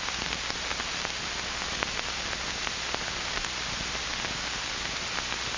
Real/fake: real